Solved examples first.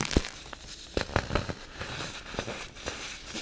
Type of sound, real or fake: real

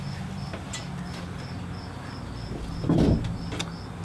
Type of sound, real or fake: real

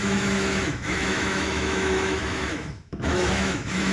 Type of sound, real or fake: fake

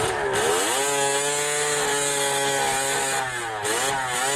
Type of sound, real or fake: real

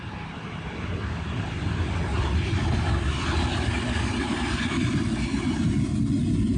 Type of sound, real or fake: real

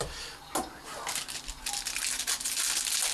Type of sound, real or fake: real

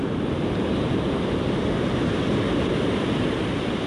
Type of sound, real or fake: real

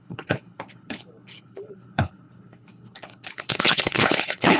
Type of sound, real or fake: fake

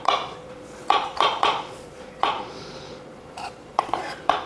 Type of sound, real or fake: fake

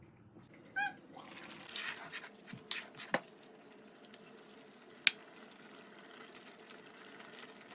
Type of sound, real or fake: real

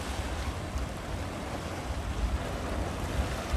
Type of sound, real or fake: real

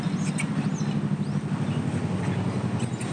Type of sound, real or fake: real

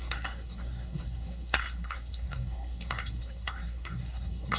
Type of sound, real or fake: fake